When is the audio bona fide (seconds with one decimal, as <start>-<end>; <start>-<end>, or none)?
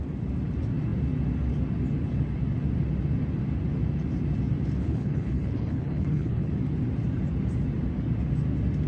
0.0-4.8; 6.5-8.9